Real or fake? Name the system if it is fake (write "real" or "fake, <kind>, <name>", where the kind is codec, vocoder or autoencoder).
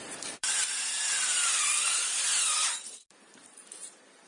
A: fake, vocoder, BigVGAN v2